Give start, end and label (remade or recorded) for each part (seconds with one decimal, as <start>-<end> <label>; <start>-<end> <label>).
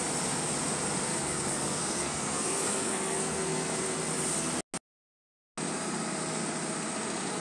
0.0-1.1 recorded; 1.1-3.8 remade; 3.8-7.4 recorded